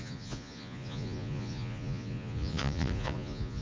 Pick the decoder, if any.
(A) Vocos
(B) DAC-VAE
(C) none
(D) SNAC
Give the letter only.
A